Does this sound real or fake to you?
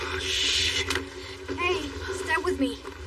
real